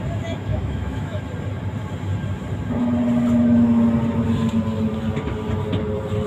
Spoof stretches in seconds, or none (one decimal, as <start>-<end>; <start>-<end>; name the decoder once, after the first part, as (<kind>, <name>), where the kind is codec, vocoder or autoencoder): 0.5-1.2 (autoencoder, DAC-VAE)

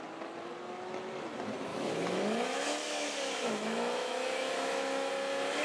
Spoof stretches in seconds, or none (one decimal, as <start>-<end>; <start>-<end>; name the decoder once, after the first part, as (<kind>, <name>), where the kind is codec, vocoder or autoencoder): 1.7-5.1 (autoencoder, DAC-VAE)

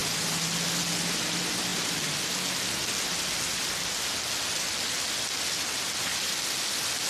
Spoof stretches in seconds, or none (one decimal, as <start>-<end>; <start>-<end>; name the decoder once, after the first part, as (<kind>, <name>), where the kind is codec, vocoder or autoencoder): none